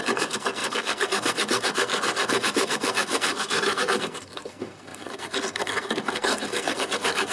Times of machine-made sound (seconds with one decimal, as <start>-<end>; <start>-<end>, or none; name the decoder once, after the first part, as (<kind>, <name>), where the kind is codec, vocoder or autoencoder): 0.0-7.3 (codec, SNAC)